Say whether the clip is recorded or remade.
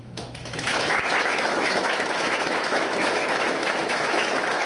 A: remade